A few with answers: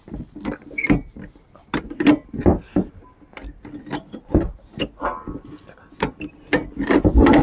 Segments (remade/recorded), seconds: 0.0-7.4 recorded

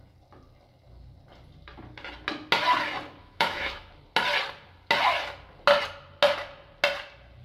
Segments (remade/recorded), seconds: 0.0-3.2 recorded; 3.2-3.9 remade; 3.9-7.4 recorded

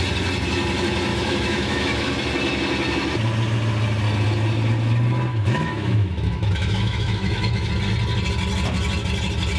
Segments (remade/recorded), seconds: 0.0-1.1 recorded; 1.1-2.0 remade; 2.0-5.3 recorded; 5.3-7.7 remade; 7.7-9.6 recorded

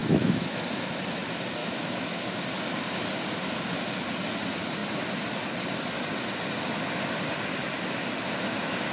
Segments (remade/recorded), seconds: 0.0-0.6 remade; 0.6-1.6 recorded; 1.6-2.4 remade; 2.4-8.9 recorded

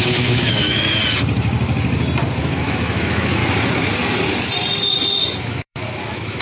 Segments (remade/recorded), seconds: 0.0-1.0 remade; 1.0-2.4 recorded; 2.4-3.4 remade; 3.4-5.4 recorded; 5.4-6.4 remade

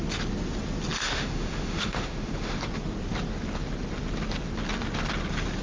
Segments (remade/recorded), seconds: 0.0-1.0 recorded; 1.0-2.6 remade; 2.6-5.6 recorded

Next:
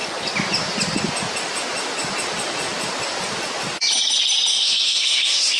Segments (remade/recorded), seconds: 0.0-4.5 recorded; 4.5-5.6 remade